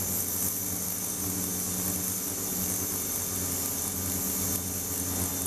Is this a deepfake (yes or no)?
no